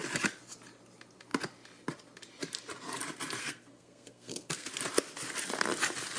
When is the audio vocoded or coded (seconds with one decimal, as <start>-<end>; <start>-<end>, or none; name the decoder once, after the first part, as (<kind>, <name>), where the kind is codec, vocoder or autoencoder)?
3.4-4.7 (codec, SNAC)